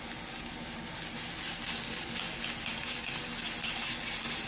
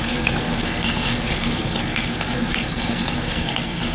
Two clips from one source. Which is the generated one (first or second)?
second